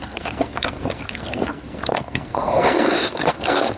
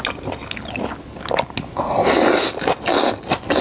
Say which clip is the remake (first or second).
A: first